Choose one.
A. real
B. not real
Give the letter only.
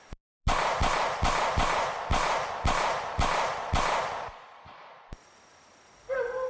A